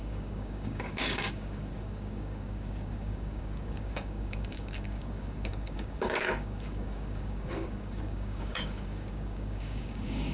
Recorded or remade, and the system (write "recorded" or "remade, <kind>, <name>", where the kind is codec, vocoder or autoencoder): remade, codec, DAC